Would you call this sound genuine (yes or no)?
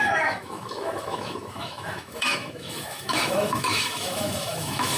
no